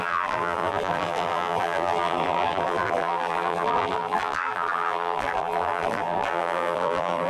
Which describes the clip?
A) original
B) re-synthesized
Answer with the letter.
B